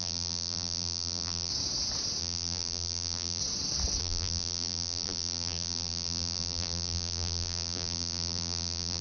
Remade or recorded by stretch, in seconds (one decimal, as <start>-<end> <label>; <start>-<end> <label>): 0.0-1.5 remade; 1.5-2.2 recorded; 2.2-3.4 remade; 3.4-4.0 recorded; 4.0-9.0 remade